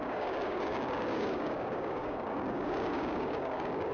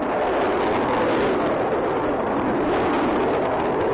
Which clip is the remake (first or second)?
first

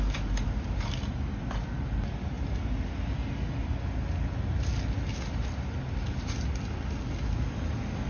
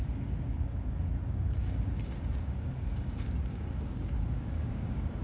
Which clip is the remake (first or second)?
second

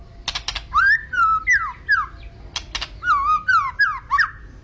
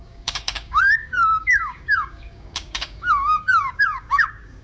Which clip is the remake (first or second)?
second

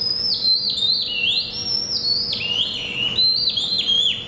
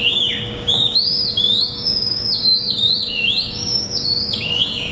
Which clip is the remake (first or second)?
second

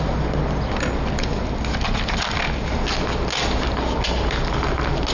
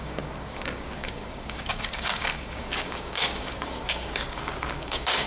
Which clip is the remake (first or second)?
second